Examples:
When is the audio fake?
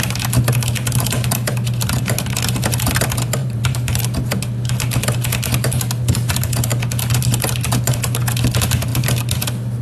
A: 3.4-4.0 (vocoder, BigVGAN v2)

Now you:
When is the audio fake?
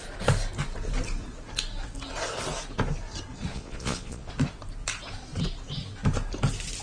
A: 3.5-4.3 (vocoder, Vocos)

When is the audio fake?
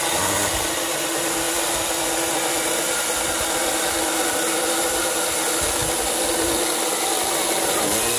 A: none